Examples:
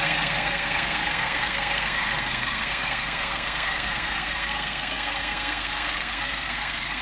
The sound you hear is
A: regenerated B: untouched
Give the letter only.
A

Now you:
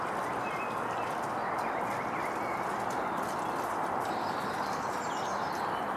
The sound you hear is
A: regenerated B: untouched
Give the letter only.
B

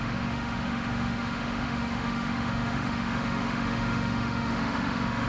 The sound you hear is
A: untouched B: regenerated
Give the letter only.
B